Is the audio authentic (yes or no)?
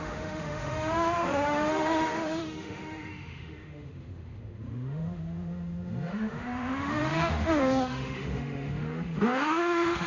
no